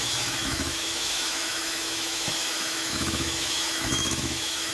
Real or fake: fake